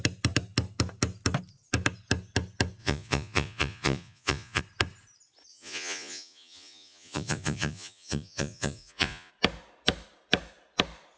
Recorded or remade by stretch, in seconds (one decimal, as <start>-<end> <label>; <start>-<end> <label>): 0.0-2.8 recorded; 2.8-4.6 remade; 4.6-5.5 recorded; 5.5-9.3 remade; 9.3-11.2 recorded